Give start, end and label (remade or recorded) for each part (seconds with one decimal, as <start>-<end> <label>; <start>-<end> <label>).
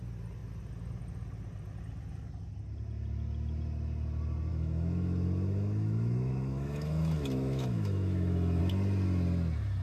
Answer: 0.0-4.5 recorded; 4.5-8.6 remade; 8.6-9.8 recorded